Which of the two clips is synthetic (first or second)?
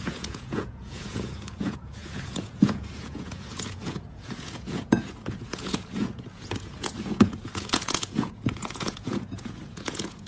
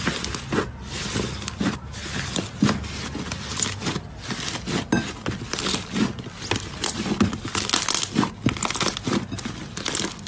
first